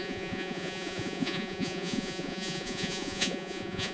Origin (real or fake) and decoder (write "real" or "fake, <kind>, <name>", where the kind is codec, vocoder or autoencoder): fake, vocoder, Vocos